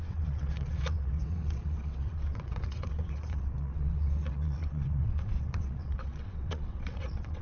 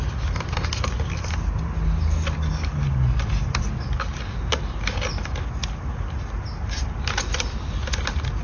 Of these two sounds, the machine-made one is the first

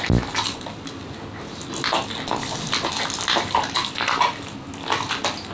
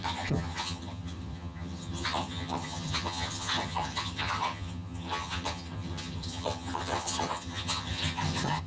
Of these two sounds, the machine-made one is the second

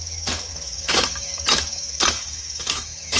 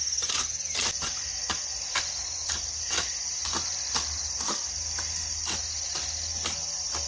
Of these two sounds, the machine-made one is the first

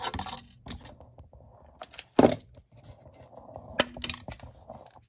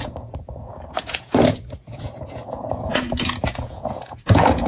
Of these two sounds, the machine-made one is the second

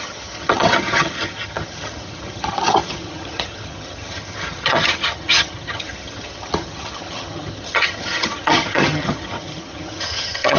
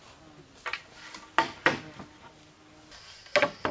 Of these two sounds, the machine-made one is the first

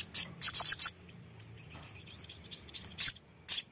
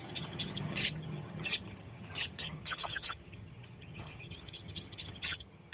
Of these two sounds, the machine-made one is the second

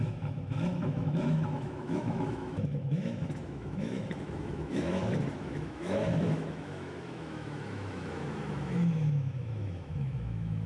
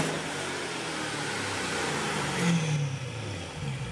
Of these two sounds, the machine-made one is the first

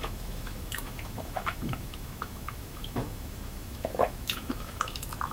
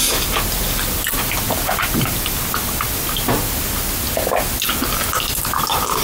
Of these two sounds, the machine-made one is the first